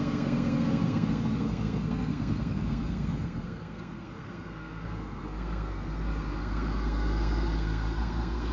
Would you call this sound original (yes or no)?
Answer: no